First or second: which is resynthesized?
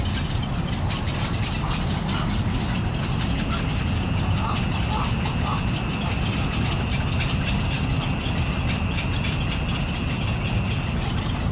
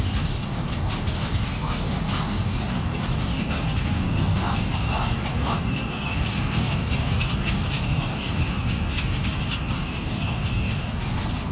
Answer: second